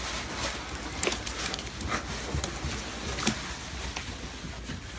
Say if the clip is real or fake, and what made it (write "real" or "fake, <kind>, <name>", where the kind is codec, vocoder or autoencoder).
real